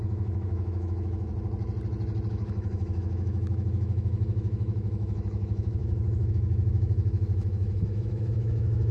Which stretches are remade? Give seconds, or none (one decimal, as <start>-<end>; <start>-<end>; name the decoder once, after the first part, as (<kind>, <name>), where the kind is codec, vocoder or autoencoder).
0.0-1.3 (autoencoder, DAC-VAE); 2.3-8.9

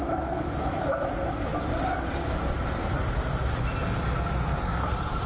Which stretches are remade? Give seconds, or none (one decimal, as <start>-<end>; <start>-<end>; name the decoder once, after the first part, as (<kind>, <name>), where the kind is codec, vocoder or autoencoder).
0.0-0.8 (autoencoder, DAC-VAE)

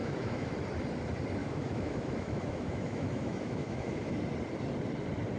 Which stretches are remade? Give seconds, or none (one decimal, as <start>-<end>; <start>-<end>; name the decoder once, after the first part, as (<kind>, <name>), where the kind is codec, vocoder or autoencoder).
0.0-0.5 (autoencoder, DAC-VAE); 1.4-4.2